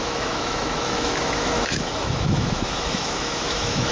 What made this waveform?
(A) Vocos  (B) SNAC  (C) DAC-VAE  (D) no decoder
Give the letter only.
C